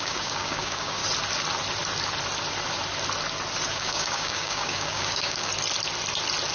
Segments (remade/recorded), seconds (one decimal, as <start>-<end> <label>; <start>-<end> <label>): 0.0-1.0 remade; 1.0-3.7 recorded; 3.7-5.5 remade; 5.5-6.5 recorded